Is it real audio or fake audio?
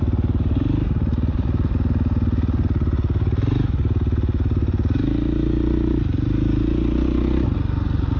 real